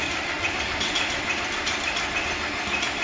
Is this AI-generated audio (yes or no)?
no